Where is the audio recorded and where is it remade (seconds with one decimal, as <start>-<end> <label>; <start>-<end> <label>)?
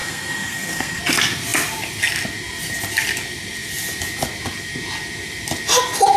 0.0-1.0 remade; 1.0-6.2 recorded